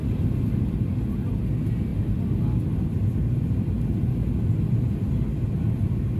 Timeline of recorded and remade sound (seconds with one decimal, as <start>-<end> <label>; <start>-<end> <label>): 0.0-6.2 recorded